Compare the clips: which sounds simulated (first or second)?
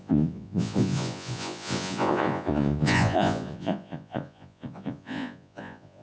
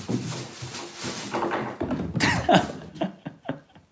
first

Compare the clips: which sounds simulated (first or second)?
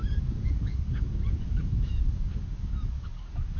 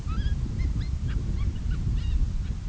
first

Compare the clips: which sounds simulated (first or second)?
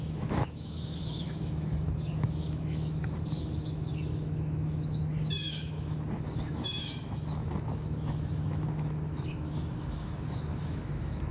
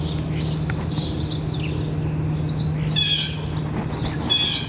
first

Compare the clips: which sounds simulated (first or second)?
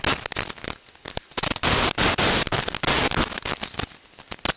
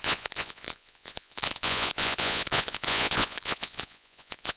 second